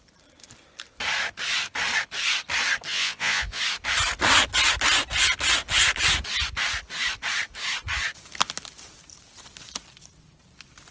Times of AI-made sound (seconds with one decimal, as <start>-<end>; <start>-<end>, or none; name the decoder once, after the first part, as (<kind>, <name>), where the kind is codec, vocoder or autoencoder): 2.9-3.6 (vocoder, Vocos)